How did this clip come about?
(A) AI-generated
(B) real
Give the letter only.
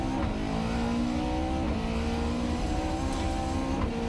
B